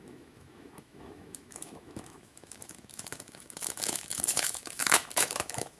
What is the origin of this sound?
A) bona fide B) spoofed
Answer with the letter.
B